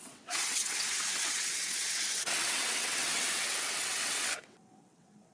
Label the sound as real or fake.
fake